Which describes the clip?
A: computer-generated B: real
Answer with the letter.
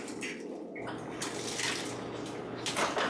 B